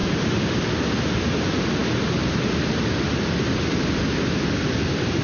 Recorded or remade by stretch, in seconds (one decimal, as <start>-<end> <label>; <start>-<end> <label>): 0.0-5.2 recorded